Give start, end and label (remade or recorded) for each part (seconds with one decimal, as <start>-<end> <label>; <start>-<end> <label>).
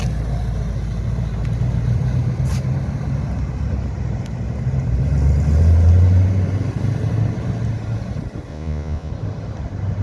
0.0-8.5 recorded; 8.5-9.1 remade; 9.1-10.0 recorded